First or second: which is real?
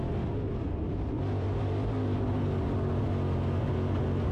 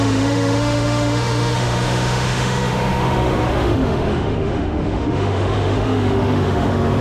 first